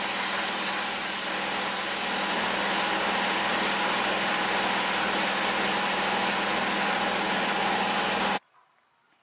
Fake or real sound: real